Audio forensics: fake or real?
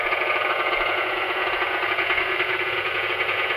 fake